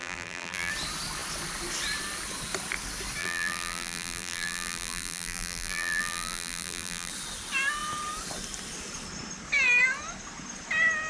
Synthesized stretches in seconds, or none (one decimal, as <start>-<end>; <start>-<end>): 0.0-0.7; 3.2-7.1